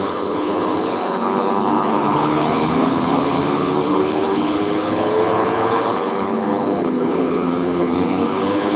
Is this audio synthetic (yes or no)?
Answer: yes